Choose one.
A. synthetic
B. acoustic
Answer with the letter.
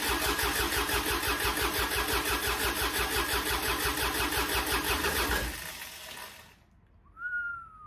B